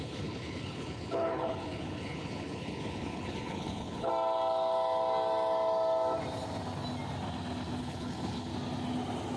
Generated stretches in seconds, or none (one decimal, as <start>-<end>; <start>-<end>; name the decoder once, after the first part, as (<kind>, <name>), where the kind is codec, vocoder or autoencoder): 0.0-4.1 (codec, HILCodec); 7.8-8.5